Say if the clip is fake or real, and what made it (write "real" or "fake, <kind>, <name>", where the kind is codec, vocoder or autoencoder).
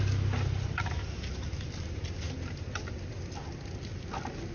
real